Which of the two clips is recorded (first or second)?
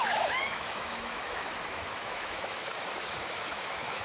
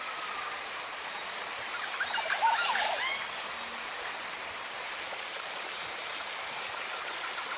second